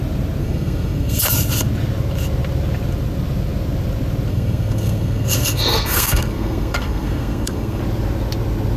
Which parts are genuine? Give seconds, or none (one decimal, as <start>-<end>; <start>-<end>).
0.0-0.4; 1.2-4.3; 7.8-8.8